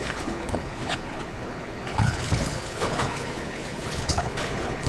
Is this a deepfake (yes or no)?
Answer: yes